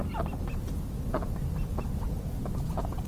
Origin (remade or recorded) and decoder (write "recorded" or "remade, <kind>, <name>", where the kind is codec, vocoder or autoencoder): recorded